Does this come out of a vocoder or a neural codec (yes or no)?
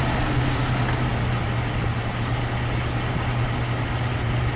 no